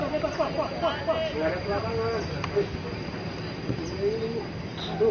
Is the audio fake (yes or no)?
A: no